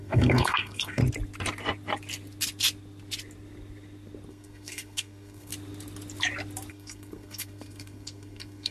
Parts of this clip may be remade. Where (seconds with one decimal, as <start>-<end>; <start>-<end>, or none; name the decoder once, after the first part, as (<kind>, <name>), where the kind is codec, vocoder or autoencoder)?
0.0-1.0 (codec, SNAC); 4.3-5.5; 6.7-8.7

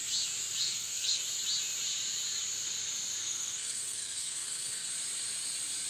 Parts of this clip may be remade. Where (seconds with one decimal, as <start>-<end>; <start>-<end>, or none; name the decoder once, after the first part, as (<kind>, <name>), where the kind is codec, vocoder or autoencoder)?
0.6-1.2 (codec, SNAC); 3.2-4.9

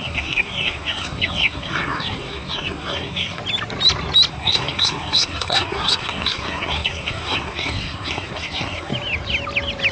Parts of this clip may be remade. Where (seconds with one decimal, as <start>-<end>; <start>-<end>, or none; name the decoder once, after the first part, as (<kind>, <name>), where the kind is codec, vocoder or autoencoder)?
0.0-3.4 (codec, SNAC); 4.3-8.9

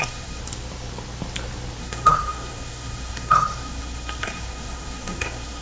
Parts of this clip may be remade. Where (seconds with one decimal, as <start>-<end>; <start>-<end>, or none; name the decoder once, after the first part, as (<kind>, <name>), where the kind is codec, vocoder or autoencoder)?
0.0-0.4 (codec, SNAC); 1.8-5.6

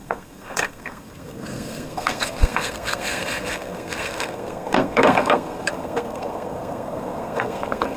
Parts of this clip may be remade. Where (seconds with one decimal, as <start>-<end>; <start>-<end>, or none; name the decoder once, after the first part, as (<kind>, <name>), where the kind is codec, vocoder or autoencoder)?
0.0-8.0 (codec, SNAC)

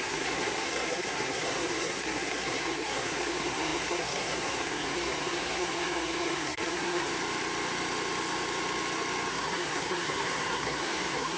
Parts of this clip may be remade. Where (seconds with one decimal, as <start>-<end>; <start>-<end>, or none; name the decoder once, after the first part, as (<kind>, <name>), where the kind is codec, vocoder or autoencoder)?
0.0-7.1 (codec, SNAC); 9.3-11.4

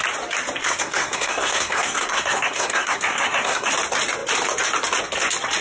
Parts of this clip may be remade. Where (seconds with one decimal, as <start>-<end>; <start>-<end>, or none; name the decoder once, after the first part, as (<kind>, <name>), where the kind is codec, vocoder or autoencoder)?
0.6-3.7 (codec, SNAC)

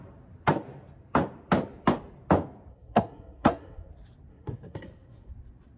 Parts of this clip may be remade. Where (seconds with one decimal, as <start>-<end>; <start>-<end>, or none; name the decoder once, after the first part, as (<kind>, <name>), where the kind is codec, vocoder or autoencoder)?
2.7-3.9 (codec, SNAC); 4.3-5.3